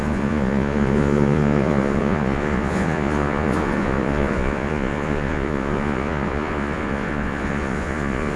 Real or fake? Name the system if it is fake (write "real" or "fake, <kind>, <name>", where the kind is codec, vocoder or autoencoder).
fake, vocoder, Vocos